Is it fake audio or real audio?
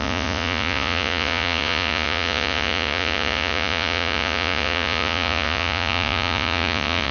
fake